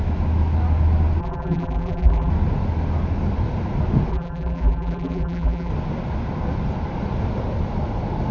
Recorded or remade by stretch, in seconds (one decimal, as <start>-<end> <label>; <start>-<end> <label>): 0.0-1.2 recorded; 1.2-2.3 remade; 2.3-4.1 recorded; 4.1-5.7 remade; 5.7-8.3 recorded